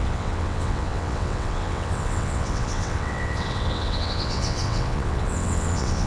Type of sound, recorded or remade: remade